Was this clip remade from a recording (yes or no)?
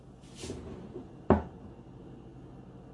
no